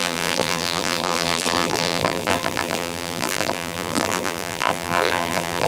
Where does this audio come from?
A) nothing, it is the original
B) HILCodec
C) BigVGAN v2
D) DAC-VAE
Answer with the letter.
C